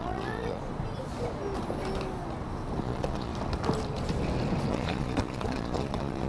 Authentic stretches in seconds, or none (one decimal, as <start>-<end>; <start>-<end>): 0.6-2.8; 3.3-4.7